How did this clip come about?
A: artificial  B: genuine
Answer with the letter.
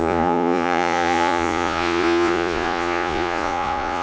A